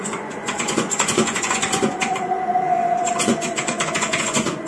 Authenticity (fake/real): fake